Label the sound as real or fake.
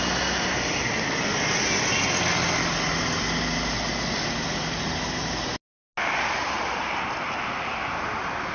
real